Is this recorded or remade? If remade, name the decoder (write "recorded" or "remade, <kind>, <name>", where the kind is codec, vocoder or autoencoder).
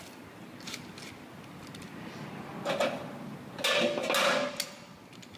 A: recorded